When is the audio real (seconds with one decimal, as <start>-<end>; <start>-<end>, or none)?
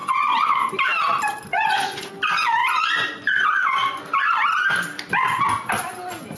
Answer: 0.7-1.5; 2.1-2.6; 4.0-6.4